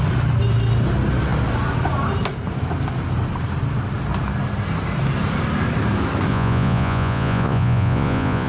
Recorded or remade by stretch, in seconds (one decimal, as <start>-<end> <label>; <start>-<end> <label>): 0.0-6.3 recorded; 6.3-8.5 remade